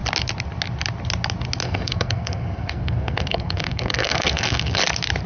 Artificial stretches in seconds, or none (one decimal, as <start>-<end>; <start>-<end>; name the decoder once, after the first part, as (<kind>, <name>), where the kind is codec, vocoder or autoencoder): 1.6-4.8 (codec, SNAC)